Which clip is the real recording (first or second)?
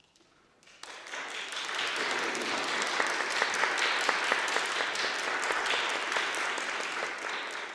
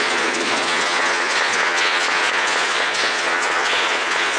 first